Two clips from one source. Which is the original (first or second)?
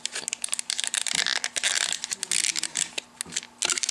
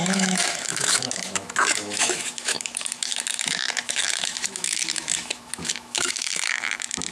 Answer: first